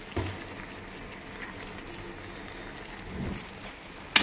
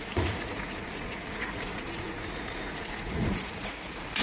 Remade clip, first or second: second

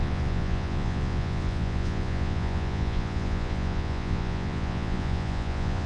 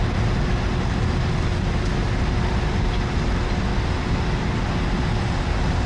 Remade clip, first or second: first